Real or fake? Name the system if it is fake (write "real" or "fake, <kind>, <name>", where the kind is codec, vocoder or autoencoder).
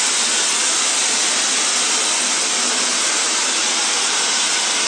real